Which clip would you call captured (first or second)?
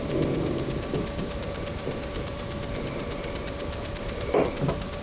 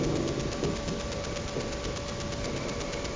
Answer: second